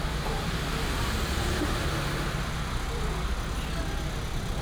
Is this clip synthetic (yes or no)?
no